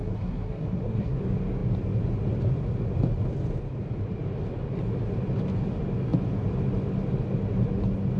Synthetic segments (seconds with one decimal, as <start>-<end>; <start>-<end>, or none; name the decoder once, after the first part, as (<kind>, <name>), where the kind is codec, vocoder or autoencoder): 0.0-1.2 (codec, SNAC)